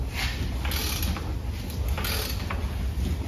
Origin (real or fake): real